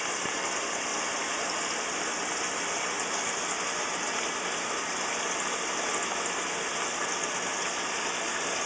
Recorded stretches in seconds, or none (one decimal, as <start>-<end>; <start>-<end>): 0.0-8.7